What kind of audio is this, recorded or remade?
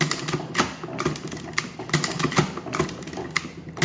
remade